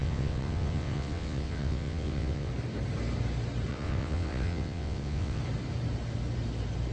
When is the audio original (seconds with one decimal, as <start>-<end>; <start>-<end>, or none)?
2.5-3.7; 5.4-6.9